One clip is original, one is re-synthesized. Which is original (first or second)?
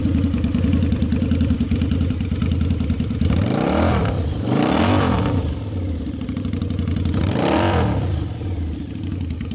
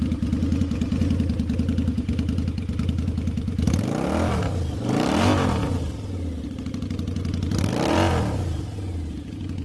second